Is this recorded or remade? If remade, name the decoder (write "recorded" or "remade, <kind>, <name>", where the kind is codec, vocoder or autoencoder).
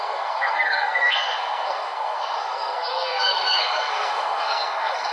remade, codec, SNAC